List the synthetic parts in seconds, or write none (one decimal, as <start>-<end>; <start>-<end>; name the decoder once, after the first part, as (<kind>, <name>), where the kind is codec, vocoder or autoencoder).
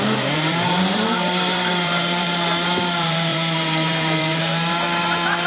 0.0-5.5 (vocoder, BigVGAN v2)